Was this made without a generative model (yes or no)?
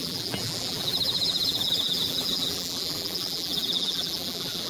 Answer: no